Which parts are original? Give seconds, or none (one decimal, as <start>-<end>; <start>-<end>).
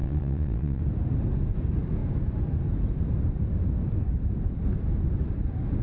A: 0.8-5.8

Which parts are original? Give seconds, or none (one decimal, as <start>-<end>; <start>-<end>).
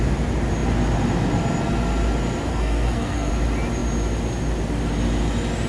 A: 0.0-2.5; 3.3-5.7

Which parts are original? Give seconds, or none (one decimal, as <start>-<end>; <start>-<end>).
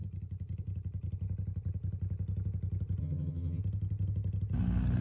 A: 0.0-3.0; 3.6-5.0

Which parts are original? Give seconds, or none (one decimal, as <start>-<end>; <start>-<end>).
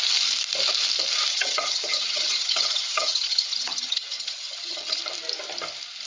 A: 0.0-1.3; 5.0-6.1